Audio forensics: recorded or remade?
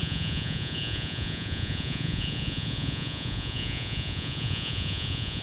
remade